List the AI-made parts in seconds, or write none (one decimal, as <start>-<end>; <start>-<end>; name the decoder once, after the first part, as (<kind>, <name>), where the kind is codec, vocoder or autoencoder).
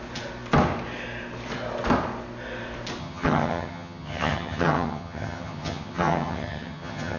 3.0-7.2 (vocoder, HiFi-GAN)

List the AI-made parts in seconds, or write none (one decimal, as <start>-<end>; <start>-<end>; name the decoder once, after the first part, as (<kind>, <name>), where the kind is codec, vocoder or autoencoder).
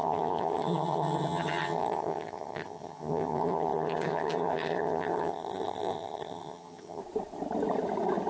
0.0-7.0 (vocoder, HiFi-GAN)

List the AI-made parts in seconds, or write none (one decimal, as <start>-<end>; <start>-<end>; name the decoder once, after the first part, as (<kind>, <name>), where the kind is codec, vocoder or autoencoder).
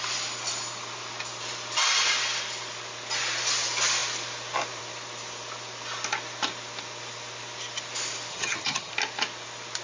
8.3-8.9 (vocoder, HiFi-GAN)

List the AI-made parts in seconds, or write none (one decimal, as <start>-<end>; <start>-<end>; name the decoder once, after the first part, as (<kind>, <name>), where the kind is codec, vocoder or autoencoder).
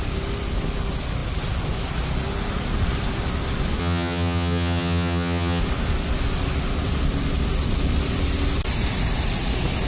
3.8-5.6 (vocoder, HiFi-GAN)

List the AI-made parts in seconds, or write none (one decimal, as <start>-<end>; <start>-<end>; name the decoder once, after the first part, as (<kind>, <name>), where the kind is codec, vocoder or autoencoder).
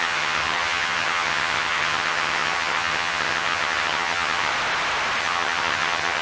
0.0-4.5 (vocoder, HiFi-GAN); 5.2-6.2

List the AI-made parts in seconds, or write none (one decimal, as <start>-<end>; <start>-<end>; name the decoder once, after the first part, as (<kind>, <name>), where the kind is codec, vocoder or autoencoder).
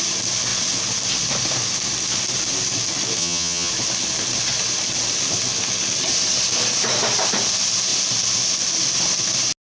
3.2-3.7 (vocoder, HiFi-GAN)